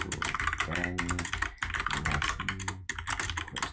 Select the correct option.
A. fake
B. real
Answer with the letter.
B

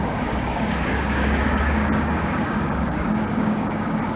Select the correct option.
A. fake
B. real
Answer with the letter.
A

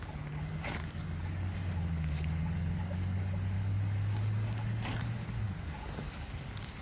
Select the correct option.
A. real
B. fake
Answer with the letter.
B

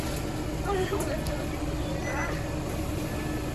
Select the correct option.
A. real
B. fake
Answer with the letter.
A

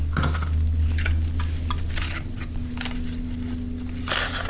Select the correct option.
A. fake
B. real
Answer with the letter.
B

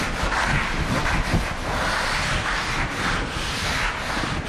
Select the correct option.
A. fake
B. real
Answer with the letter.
B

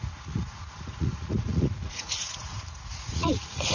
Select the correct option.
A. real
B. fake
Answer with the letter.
B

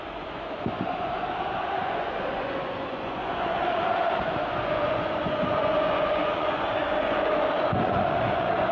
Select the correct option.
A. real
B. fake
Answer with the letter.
B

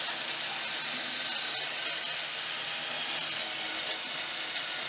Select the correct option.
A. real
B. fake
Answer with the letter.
A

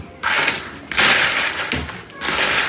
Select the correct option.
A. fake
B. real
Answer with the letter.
B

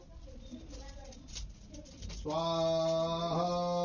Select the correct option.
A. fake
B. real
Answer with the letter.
B